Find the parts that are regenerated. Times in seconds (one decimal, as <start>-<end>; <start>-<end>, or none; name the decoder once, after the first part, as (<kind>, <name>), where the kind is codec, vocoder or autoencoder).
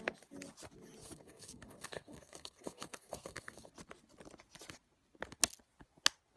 1.0-3.7 (codec, SNAC)